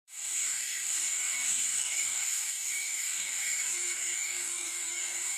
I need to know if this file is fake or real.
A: fake